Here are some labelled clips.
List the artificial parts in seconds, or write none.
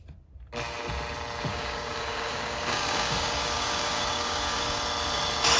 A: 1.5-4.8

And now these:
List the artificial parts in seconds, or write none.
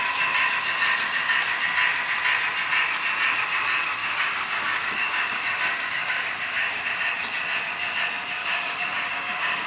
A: 4.0-6.8; 8.4-9.7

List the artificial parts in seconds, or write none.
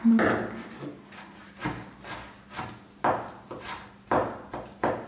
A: none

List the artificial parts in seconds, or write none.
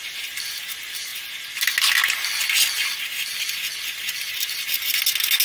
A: none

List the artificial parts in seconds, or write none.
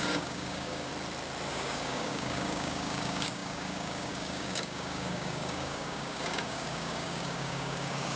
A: 0.0-0.9; 1.5-8.2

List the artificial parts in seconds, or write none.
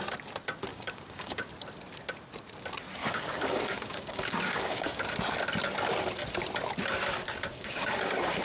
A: 0.7-1.5; 3.0-5.0; 7.5-8.4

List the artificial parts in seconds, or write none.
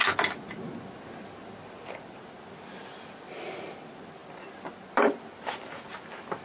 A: none